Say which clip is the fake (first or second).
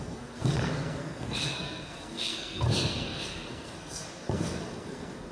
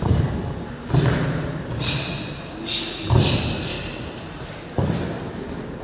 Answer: first